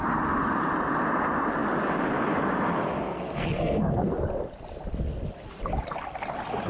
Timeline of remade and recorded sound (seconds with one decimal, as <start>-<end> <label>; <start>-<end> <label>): 0.0-3.1 recorded; 3.1-4.2 remade; 4.2-6.7 recorded